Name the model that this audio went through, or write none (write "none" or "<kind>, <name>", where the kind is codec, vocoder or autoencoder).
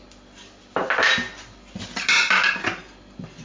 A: none